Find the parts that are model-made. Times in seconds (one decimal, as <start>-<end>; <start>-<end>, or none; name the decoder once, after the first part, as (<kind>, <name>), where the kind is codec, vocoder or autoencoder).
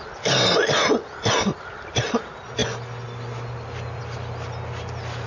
none